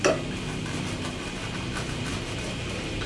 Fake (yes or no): no